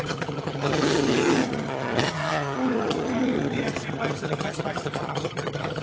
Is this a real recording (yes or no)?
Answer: no